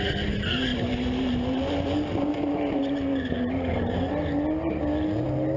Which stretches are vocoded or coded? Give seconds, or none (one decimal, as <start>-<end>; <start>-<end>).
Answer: 0.7-4.1